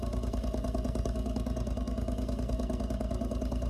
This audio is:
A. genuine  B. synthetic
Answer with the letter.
B